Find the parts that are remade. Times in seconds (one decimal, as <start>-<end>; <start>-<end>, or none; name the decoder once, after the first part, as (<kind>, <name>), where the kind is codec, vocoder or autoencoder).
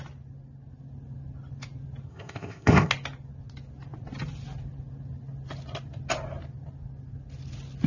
2.1-2.9 (codec, ZipCodec)